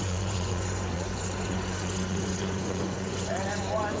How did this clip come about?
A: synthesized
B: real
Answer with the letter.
A